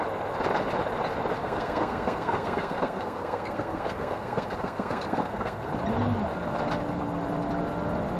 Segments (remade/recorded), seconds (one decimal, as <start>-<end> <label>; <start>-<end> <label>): 0.0-1.4 recorded; 1.4-5.7 remade; 5.7-8.2 recorded